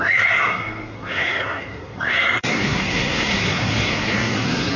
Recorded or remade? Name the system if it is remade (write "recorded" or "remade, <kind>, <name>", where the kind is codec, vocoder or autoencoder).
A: remade, codec, SNAC